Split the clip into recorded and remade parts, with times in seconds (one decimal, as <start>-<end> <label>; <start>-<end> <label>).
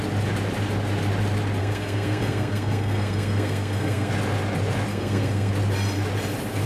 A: 0.0-1.6 recorded; 1.6-4.1 remade; 4.1-4.9 recorded; 4.9-5.5 remade; 5.5-6.7 recorded